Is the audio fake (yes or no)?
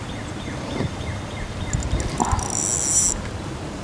no